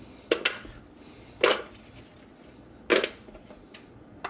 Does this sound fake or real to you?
real